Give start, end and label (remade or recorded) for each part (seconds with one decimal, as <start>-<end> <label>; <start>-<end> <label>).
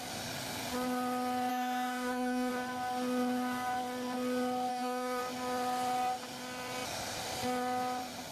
0.0-1.5 recorded; 1.5-2.5 remade; 2.5-4.7 recorded; 4.7-5.2 remade; 5.2-8.3 recorded